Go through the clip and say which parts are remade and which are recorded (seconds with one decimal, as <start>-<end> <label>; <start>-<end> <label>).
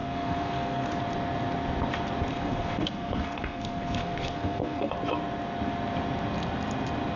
0.0-1.0 remade; 1.0-2.3 recorded; 2.3-4.9 remade; 4.9-7.2 recorded